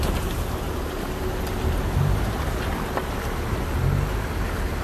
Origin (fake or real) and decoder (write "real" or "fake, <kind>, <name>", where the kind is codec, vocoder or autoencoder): real